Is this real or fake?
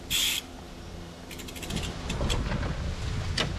real